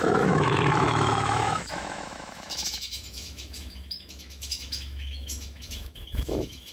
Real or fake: fake